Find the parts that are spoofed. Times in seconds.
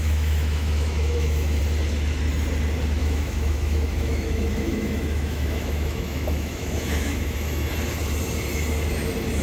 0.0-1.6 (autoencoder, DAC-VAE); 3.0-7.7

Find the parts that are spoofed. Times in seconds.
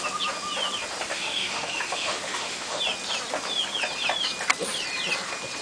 1.1-2.8 (autoencoder, DAC-VAE)